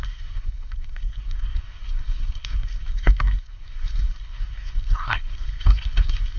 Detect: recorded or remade remade